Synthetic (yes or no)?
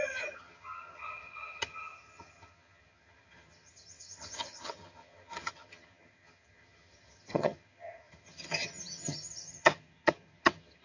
yes